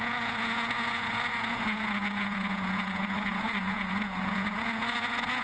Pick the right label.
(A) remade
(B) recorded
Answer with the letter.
A